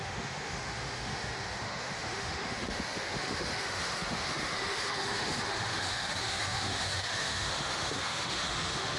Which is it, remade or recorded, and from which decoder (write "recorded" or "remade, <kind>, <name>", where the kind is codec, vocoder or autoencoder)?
remade, autoencoder, DAC-VAE